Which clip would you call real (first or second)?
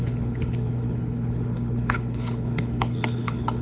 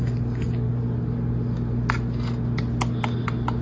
second